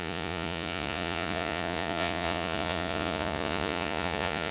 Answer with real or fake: fake